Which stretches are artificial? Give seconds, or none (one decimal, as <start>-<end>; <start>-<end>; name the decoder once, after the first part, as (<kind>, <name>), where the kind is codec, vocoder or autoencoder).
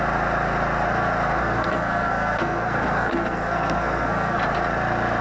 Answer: 1.4-4.4 (codec, SNAC)